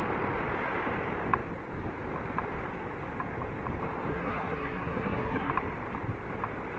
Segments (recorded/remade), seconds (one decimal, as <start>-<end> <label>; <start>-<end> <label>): 0.0-4.1 recorded; 4.1-5.5 remade; 5.5-6.8 recorded